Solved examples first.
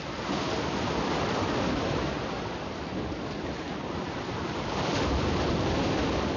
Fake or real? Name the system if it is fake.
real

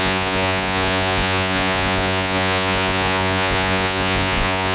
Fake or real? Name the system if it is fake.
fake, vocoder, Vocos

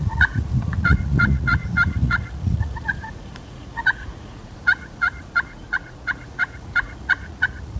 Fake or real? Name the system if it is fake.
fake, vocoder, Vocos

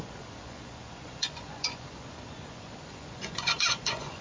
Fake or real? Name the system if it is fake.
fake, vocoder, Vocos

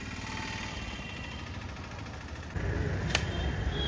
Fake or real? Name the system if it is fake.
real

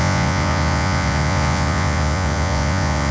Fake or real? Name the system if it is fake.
fake, vocoder, Vocos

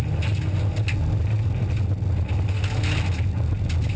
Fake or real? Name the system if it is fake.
real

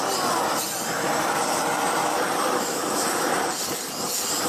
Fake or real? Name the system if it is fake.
real